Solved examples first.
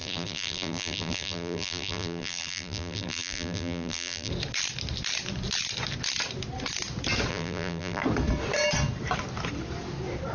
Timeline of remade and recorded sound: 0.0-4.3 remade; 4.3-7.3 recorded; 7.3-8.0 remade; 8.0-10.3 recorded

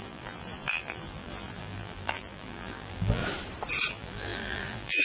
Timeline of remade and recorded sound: 0.0-3.2 remade; 3.2-3.9 recorded; 3.9-5.0 remade

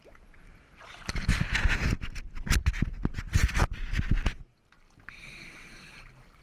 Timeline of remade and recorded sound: 0.0-6.4 recorded

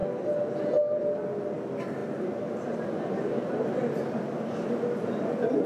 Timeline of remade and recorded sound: 0.0-5.7 recorded

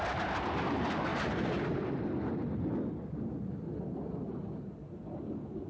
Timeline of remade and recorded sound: 0.0-1.1 recorded; 1.1-2.0 remade; 2.0-5.7 recorded

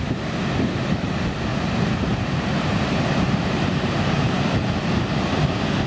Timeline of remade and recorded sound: 0.0-1.5 recorded; 1.5-4.5 remade; 4.5-5.9 recorded

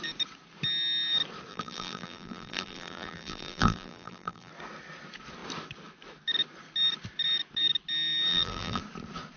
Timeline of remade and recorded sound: 0.0-1.5 recorded; 1.5-4.5 remade; 4.5-8.3 recorded; 8.3-8.8 remade; 8.8-9.4 recorded

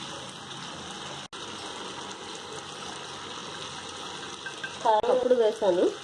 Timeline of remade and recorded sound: 0.0-6.0 recorded